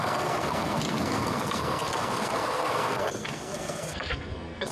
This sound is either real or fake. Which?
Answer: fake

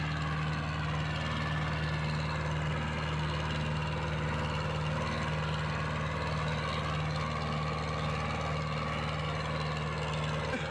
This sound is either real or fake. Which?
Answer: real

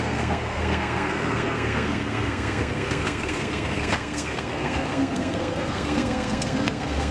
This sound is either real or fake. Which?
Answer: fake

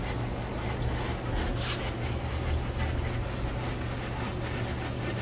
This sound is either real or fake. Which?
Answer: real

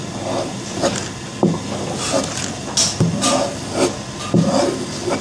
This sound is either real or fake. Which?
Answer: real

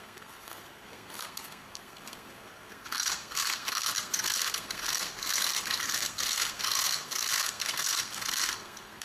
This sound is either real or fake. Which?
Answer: fake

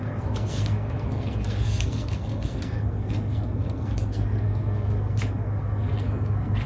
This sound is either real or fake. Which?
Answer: fake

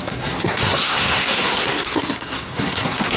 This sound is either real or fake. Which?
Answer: fake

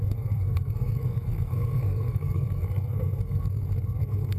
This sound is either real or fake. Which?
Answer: fake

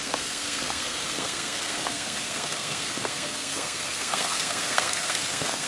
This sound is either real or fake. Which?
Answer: fake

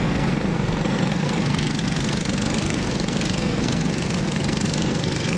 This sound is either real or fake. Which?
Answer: fake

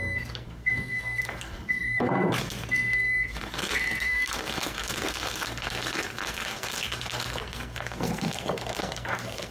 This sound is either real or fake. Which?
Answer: fake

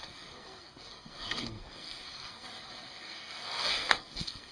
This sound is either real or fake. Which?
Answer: fake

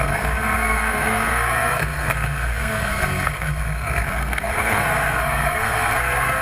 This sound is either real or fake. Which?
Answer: fake